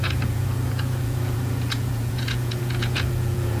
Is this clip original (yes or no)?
no